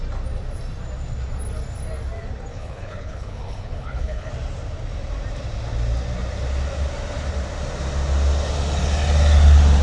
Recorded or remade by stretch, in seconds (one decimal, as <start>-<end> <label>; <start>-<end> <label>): 0.0-2.5 recorded; 2.5-4.3 remade; 4.3-9.8 recorded